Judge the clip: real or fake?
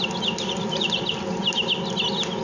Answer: real